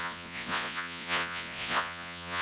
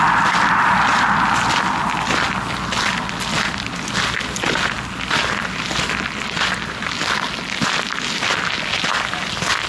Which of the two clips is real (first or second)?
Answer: second